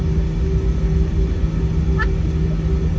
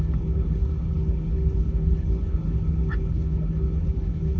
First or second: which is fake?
second